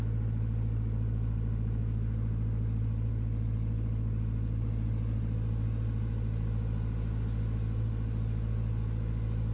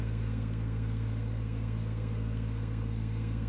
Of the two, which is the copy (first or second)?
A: second